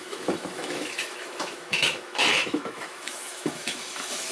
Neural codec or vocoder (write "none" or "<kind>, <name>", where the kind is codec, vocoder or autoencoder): autoencoder, DAC-VAE